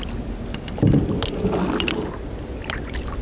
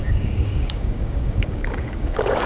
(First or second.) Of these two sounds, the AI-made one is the second